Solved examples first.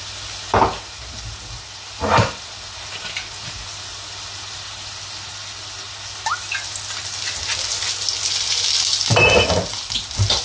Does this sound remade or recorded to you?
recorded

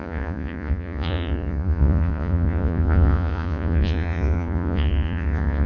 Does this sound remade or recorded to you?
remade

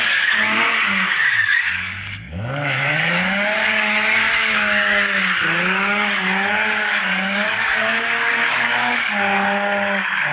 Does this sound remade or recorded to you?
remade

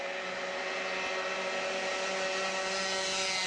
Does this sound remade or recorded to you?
recorded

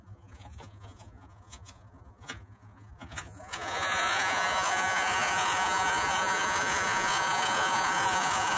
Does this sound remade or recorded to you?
remade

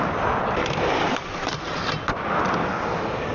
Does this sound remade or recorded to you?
recorded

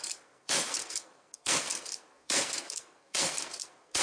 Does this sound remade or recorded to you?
remade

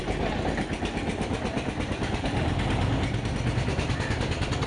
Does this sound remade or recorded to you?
recorded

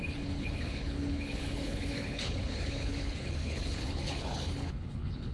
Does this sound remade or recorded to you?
remade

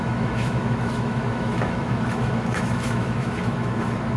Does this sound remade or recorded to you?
remade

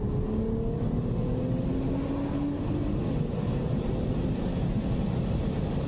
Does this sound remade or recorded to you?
recorded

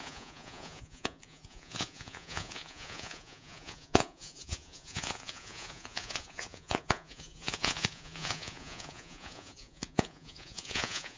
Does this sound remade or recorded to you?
remade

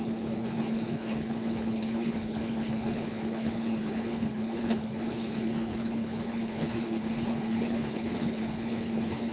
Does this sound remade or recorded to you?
remade